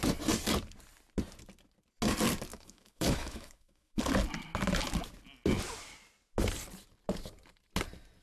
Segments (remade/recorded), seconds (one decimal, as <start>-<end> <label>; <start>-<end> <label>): 0.0-2.5 recorded; 2.5-4.0 remade; 4.0-8.2 recorded